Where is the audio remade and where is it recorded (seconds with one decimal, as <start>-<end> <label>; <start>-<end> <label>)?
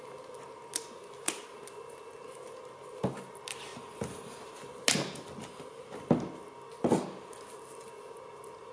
0.0-8.7 recorded